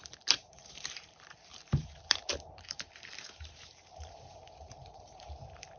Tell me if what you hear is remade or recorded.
remade